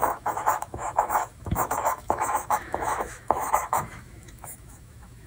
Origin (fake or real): fake